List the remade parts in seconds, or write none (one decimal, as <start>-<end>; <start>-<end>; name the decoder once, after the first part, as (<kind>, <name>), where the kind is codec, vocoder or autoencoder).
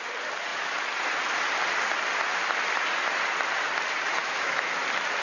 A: 4.2-4.8 (autoencoder, DAC-VAE)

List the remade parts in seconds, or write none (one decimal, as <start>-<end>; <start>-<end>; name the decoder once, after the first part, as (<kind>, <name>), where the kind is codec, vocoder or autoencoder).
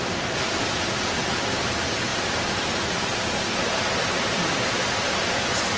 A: none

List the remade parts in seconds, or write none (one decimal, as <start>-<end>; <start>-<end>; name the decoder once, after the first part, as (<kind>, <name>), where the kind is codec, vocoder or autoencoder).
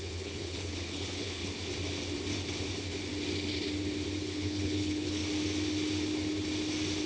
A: 0.0-1.4 (codec, HILCodec); 4.2-5.2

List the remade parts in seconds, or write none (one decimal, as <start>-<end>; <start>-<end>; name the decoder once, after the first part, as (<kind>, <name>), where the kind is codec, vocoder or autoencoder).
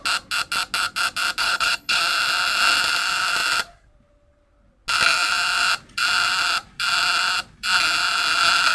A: 1.4-2.0 (codec, HILCodec)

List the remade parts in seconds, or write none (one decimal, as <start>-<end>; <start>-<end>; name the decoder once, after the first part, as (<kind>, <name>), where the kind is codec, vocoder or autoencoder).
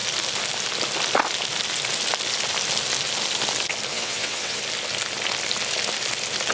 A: 3.9-4.6 (vocoder, WaveNeXt)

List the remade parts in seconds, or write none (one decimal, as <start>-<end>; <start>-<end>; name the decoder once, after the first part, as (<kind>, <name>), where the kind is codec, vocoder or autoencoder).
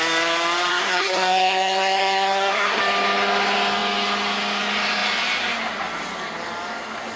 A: 0.7-2.8 (codec, SNAC)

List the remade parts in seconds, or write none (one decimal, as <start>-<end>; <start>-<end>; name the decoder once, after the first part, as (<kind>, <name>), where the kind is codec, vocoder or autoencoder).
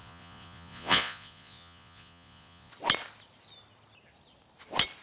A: 0.0-2.7 (vocoder, Vocos)